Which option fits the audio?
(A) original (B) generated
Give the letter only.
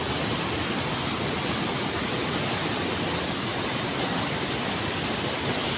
A